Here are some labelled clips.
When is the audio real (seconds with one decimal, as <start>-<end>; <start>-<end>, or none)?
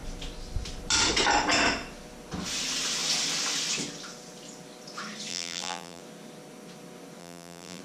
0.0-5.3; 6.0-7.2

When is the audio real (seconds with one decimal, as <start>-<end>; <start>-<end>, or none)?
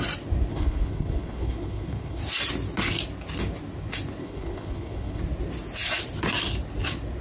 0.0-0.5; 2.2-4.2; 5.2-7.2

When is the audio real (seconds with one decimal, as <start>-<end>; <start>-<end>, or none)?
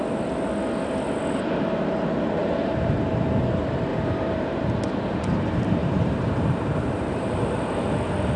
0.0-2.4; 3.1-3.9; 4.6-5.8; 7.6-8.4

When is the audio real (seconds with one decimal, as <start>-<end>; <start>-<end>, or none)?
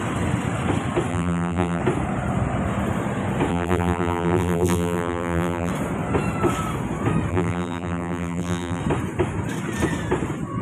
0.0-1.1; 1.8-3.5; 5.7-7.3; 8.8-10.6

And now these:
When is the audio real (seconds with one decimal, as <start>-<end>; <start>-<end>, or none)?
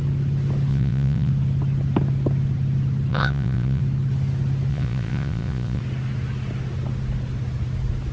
0.0-0.7; 1.3-3.1; 3.8-4.7; 5.8-8.1